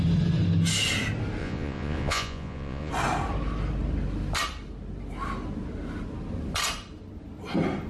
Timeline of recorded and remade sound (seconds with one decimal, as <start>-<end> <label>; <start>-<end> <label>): 0.0-1.4 recorded; 1.4-2.9 remade; 2.9-7.9 recorded